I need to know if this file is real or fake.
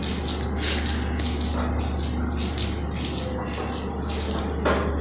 real